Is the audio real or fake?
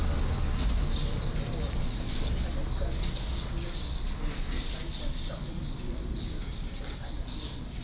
real